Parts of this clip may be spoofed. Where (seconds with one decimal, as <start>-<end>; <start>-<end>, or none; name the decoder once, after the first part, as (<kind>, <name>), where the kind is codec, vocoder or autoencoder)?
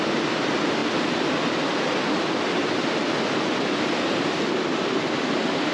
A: none